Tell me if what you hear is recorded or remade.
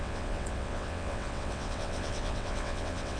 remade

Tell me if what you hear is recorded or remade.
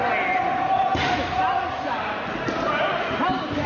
recorded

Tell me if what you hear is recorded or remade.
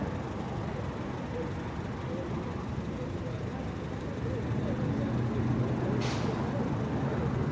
recorded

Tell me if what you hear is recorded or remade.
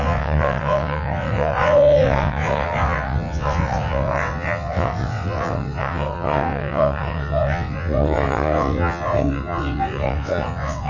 remade